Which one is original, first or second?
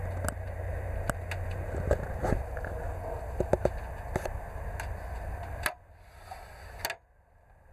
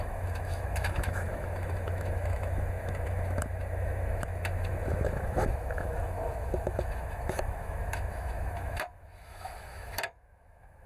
first